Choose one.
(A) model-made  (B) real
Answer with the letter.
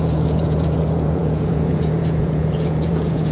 A